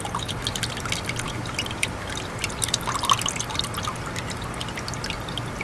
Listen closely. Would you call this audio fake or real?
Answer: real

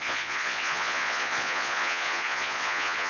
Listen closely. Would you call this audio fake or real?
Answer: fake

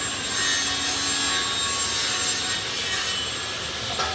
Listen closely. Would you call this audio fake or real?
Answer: real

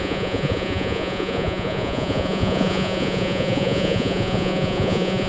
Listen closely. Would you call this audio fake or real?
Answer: fake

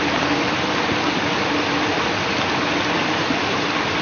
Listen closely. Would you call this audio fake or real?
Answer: real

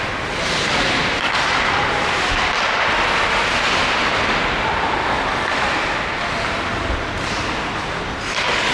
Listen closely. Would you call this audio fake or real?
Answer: real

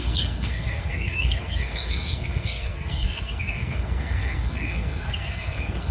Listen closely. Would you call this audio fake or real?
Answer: fake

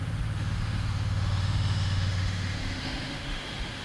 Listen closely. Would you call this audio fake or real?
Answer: fake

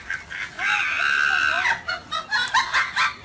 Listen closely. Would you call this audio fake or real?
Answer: real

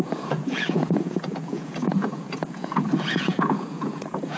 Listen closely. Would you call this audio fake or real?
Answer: fake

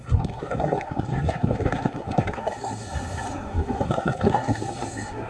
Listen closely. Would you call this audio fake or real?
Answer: fake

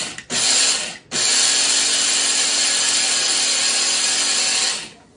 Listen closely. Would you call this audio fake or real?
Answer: real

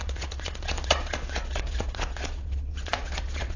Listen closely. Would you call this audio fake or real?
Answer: fake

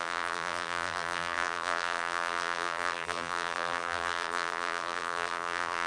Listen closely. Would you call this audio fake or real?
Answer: fake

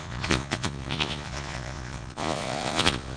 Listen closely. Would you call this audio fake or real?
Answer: fake